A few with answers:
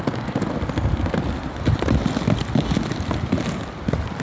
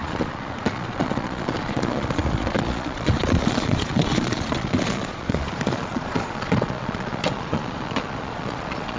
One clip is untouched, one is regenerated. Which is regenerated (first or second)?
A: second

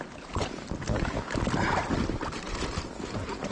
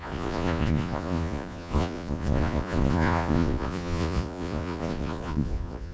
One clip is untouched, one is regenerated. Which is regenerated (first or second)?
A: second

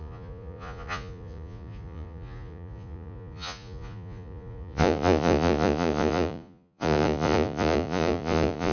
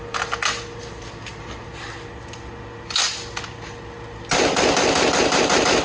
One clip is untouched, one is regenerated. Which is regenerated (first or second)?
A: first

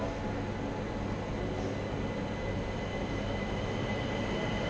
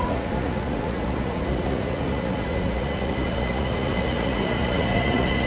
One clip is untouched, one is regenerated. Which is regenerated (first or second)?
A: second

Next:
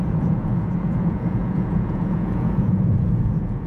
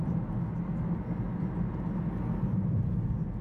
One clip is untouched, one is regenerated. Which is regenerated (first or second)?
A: first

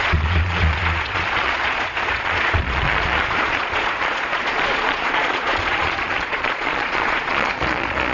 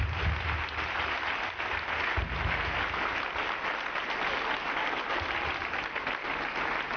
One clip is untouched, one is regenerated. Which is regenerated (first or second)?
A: first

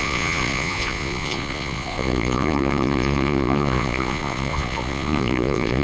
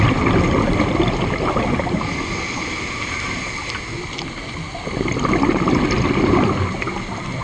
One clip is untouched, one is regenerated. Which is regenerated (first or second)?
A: first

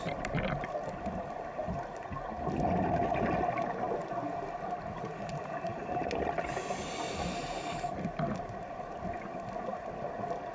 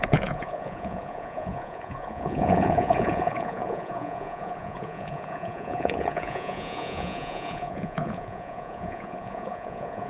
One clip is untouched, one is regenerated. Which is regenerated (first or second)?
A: second